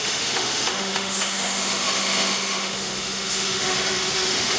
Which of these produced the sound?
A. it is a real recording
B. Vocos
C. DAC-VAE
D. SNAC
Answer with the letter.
C